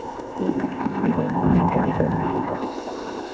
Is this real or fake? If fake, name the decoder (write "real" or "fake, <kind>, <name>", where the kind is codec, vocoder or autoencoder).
fake, codec, ZipCodec